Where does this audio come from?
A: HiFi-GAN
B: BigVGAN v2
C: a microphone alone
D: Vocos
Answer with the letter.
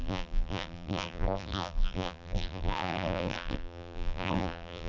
B